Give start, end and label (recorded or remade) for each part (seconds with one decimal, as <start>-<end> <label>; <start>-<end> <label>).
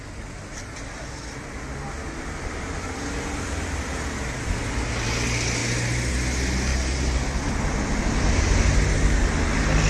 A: 0.0-9.9 recorded